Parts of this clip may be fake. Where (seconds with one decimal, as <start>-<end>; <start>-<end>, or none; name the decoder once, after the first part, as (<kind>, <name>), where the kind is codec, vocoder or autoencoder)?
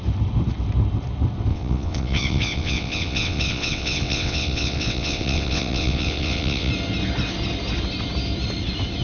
1.5-6.7 (vocoder, WaveNeXt)